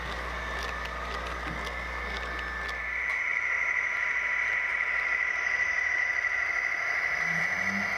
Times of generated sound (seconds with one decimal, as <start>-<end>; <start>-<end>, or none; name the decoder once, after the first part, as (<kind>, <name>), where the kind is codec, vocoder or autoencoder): 3.3-4.3 (vocoder, BigVGAN v2); 4.7-7.4